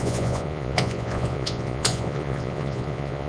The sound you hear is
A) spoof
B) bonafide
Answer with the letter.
A